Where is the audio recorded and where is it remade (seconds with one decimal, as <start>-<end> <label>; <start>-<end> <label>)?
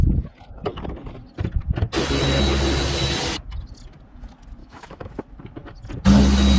0.0-4.6 recorded; 4.6-5.1 remade; 5.1-6.6 recorded